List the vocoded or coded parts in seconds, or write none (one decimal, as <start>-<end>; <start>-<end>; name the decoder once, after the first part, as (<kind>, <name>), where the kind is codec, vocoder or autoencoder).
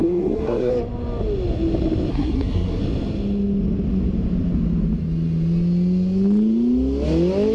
0.0-0.7 (codec, SNAC); 2.1-2.8